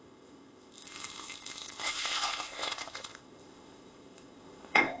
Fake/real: fake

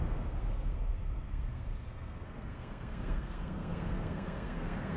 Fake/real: fake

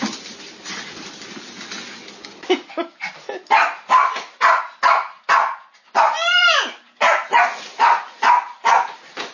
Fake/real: real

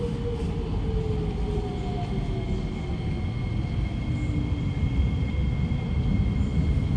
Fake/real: real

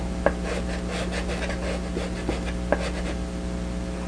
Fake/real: real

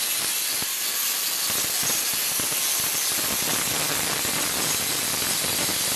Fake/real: real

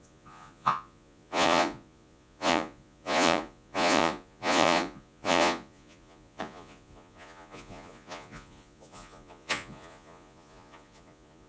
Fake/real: fake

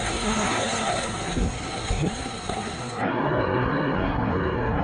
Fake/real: fake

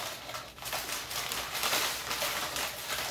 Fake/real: fake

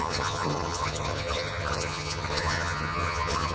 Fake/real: fake